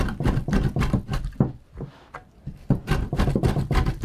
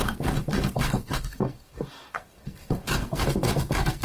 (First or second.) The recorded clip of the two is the first